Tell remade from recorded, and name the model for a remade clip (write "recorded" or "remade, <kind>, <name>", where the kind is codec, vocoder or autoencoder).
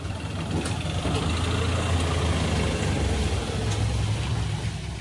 recorded